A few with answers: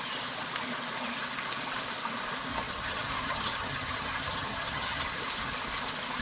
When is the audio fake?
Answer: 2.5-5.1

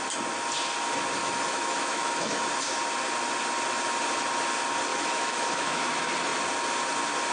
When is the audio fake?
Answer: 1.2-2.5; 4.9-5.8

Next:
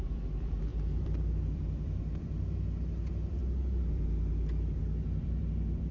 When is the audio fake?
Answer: 0.0-3.4; 3.9-5.9